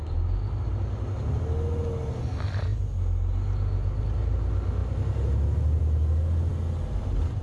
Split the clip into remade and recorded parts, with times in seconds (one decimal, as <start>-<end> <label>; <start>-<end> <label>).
0.0-7.4 recorded